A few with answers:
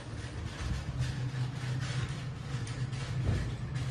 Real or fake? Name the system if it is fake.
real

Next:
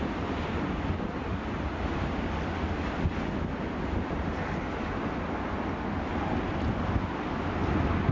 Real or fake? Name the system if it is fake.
real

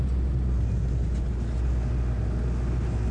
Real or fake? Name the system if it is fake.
real